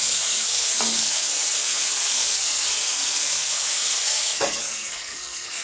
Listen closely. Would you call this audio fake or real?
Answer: fake